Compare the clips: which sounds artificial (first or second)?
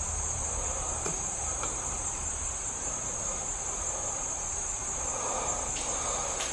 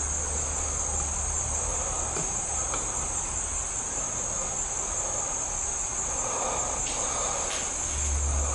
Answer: first